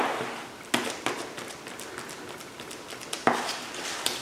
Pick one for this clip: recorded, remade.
recorded